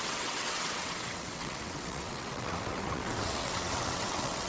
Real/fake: fake